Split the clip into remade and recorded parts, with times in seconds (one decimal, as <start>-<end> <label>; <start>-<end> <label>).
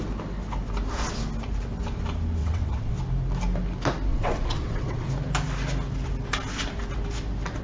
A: 0.0-2.4 recorded; 2.4-3.0 remade; 3.0-4.1 recorded; 4.1-5.1 remade; 5.1-7.6 recorded